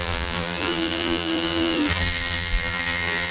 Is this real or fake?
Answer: fake